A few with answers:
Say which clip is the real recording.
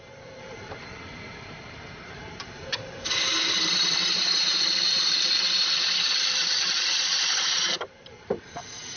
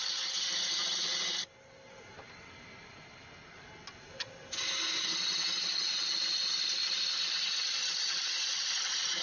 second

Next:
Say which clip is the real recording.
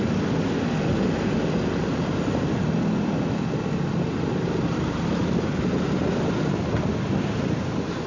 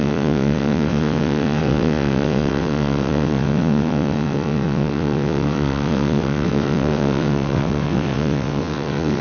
first